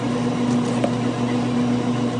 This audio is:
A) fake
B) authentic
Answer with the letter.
B